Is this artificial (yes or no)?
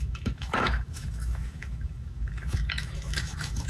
yes